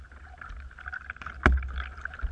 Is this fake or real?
real